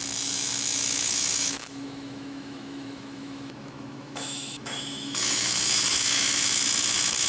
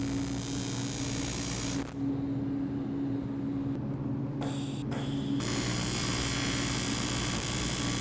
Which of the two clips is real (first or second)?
second